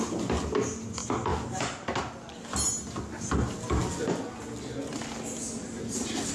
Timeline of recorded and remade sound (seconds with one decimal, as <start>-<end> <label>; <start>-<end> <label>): 0.0-6.3 recorded